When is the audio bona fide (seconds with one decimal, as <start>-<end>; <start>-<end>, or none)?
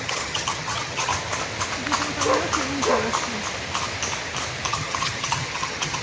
1.1-4.7